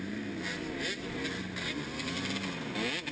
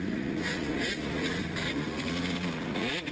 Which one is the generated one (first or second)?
second